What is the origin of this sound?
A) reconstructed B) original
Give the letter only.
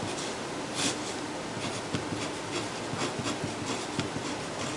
B